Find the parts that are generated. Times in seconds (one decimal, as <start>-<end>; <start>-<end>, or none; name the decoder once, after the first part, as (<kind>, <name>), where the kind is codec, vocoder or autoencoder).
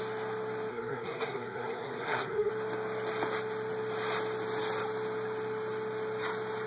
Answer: 0.7-2.5 (codec, SNAC)